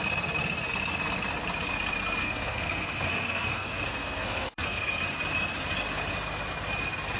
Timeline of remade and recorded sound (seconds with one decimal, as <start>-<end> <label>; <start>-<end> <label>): 0.0-2.2 recorded; 2.2-5.0 remade; 5.0-7.2 recorded